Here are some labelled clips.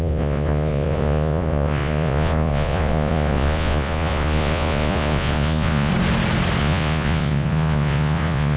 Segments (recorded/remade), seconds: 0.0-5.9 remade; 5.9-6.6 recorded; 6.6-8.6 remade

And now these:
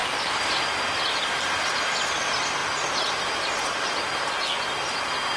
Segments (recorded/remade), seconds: 0.0-5.4 recorded

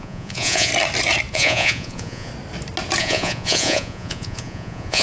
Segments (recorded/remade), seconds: 0.0-0.7 remade; 0.7-1.3 recorded; 1.3-2.3 remade; 2.3-3.0 recorded; 3.0-5.0 remade